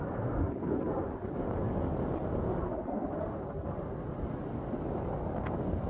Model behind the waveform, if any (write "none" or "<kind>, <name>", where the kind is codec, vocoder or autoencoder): none